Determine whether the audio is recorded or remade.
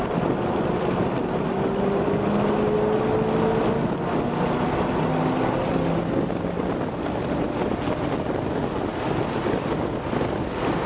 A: recorded